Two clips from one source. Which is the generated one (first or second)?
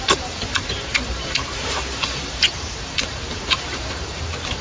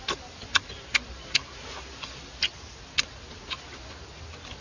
first